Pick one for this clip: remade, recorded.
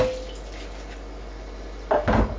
recorded